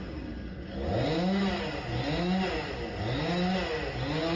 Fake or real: real